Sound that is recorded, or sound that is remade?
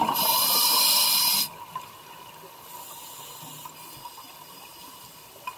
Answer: recorded